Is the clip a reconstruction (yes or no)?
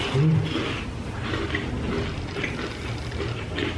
no